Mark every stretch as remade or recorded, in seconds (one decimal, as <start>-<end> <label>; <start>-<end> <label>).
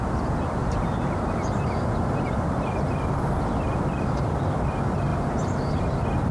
0.0-5.1 recorded; 5.1-5.8 remade; 5.8-6.3 recorded